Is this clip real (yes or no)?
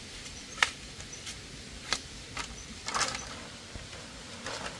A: no